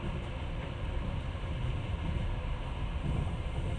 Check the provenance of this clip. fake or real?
real